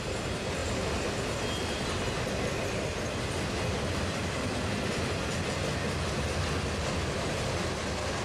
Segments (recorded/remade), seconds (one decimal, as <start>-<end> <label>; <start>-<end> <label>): 0.0-0.6 recorded; 0.6-1.3 remade; 1.3-8.2 recorded